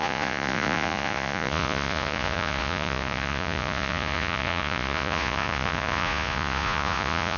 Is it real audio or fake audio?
fake